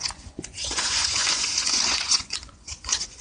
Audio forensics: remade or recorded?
remade